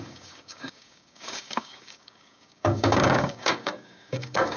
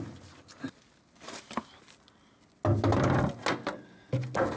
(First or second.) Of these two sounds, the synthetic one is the first